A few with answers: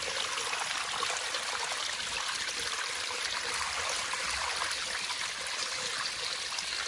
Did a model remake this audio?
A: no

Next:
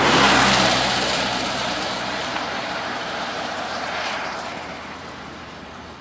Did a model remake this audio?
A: yes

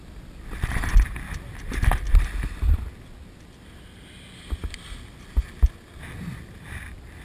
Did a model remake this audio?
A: no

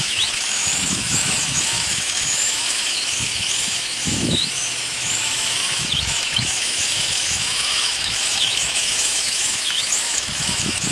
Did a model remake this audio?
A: yes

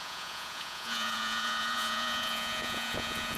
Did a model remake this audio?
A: yes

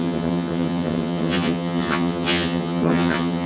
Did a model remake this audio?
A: yes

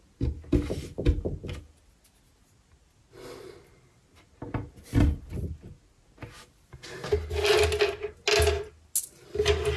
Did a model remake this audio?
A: no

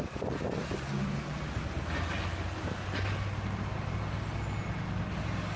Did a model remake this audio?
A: no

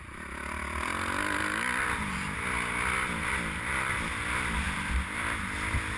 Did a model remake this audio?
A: no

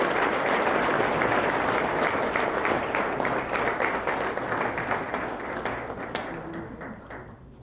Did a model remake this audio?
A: no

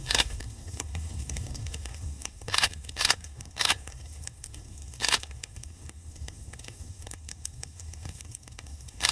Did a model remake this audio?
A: yes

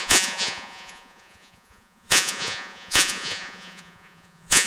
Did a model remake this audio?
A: yes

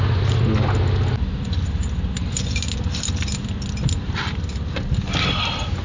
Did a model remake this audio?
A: no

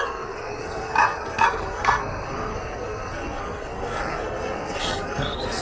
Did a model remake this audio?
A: yes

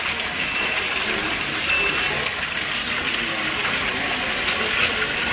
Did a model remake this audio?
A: no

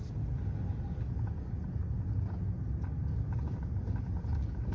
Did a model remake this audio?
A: no